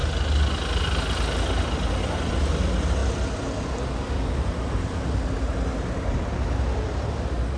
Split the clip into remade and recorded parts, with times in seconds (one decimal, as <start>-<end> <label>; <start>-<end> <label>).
0.0-7.6 recorded